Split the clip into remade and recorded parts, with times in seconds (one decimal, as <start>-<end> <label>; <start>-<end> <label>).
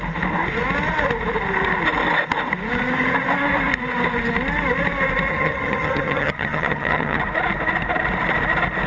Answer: 0.0-5.3 recorded; 5.3-7.2 remade; 7.2-8.9 recorded